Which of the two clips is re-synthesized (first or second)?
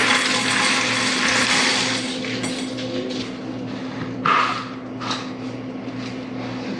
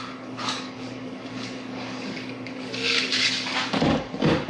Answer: second